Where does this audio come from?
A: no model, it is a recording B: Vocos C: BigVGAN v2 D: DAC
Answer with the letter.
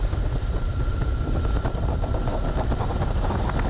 A